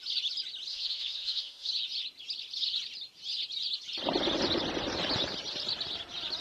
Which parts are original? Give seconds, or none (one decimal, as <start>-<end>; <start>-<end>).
0.0-0.7; 1.7-6.4